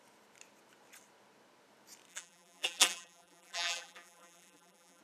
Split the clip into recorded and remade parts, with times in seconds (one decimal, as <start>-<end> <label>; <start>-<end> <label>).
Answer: 0.0-2.1 recorded; 2.1-5.0 remade